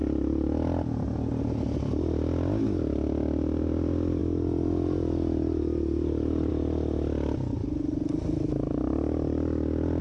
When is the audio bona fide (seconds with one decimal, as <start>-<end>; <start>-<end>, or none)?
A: 0.0-10.0